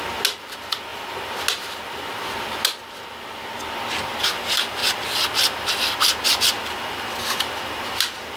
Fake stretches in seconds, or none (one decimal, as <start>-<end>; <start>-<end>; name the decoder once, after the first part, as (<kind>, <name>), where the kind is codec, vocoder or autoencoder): none

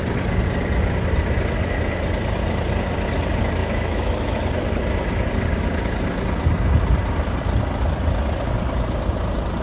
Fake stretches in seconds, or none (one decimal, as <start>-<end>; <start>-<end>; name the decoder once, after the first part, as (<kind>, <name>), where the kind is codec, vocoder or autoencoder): 3.6-4.4 (autoencoder, DAC-VAE)

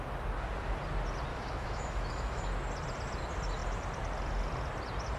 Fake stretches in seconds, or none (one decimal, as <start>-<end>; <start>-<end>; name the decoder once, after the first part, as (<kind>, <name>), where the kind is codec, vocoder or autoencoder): 1.3-2.4 (autoencoder, DAC-VAE)

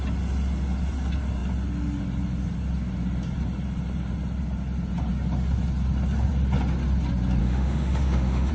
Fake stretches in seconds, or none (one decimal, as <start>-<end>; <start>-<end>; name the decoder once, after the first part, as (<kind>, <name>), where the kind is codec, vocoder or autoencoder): 7.4-8.5 (autoencoder, DAC-VAE)